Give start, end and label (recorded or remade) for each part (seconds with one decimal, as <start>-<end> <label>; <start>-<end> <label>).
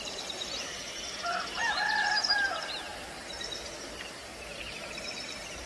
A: 0.0-5.7 remade